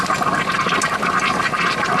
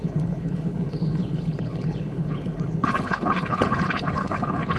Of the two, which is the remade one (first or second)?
second